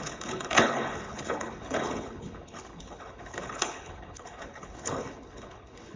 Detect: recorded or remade remade